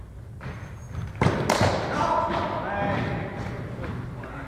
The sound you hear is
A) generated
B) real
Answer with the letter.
B